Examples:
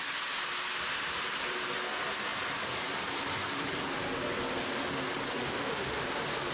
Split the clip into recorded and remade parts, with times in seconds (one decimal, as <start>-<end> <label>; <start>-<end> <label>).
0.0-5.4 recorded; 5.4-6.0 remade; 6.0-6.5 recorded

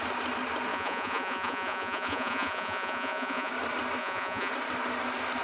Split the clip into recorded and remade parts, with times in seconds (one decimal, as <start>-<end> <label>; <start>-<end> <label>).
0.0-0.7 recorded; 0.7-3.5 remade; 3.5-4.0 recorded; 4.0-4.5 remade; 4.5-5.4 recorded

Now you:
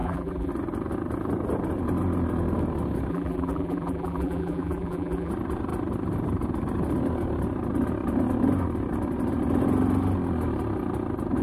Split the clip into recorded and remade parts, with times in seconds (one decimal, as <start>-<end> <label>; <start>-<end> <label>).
0.0-0.5 remade; 0.5-3.1 recorded; 3.1-5.3 remade; 5.3-11.4 recorded

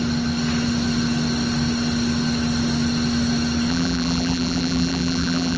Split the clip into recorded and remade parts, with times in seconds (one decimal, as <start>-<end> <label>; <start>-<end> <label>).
0.0-3.7 recorded; 3.7-5.6 remade

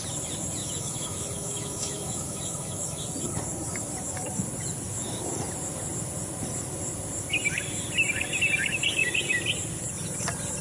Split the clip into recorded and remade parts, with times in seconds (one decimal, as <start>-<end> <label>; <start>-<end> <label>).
0.0-0.6 recorded; 0.6-3.0 remade; 3.0-10.6 recorded